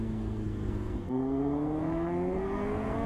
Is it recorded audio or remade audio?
remade